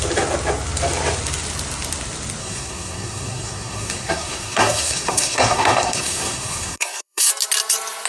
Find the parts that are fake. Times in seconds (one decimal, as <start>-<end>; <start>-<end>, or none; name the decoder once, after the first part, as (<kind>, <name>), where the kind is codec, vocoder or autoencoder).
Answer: 2.4-7.3 (codec, SNAC)